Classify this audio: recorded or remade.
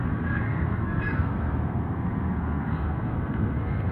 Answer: remade